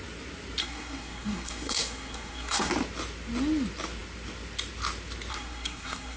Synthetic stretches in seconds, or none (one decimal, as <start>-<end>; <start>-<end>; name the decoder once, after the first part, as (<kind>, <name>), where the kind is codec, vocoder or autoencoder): 0.6-2.7 (codec, SNAC); 5.3-6.2